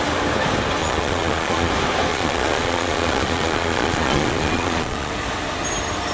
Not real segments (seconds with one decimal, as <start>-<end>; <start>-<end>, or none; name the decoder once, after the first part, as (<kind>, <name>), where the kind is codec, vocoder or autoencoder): 0.8-1.7 (vocoder, Vocos); 2.1-5.1

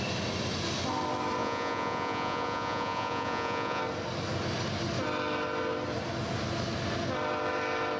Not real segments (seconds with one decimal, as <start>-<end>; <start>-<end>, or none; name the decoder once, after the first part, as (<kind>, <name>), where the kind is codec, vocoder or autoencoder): 1.4-3.8 (vocoder, Vocos)

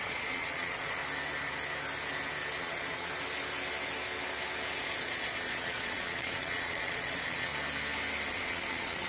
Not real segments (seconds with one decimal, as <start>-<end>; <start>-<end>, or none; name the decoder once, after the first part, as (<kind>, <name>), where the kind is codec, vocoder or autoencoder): 0.0-1.0 (vocoder, Vocos); 2.6-3.1; 4.8-7.5; 8.3-9.1

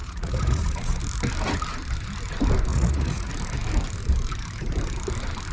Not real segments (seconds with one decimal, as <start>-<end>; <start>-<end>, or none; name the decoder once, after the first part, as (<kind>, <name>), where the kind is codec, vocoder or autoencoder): 0.0-1.0 (vocoder, Vocos); 2.7-3.3

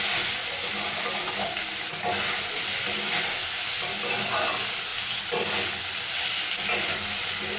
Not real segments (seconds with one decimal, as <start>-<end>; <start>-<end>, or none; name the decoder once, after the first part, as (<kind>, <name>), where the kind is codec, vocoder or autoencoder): none